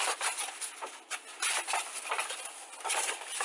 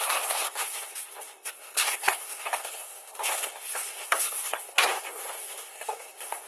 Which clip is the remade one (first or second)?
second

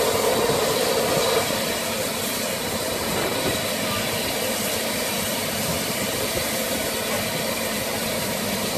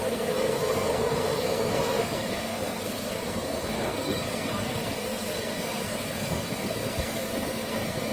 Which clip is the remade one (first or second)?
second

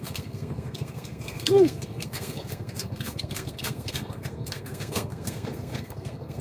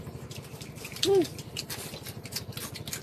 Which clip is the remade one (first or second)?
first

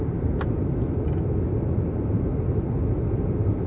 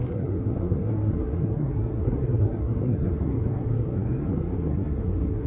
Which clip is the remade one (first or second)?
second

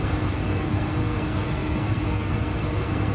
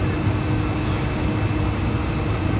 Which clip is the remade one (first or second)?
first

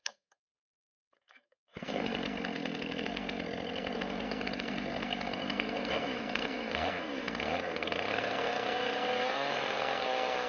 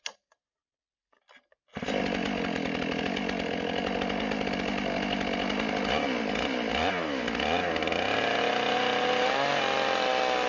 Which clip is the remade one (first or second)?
first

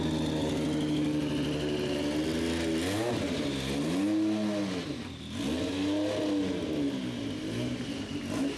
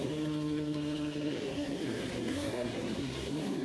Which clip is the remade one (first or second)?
second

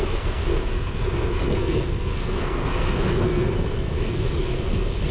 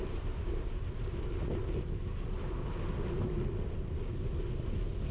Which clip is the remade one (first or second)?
first